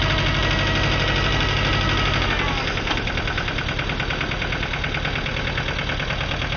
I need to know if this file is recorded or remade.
recorded